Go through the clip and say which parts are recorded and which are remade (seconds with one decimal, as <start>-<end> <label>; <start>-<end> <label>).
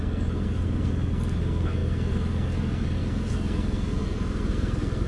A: 0.0-5.1 remade